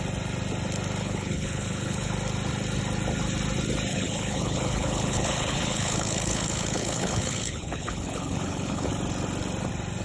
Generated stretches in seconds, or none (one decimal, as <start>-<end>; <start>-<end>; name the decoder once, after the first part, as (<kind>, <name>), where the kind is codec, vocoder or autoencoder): 1.0-2.1 (codec, HILCodec); 3.9-8.9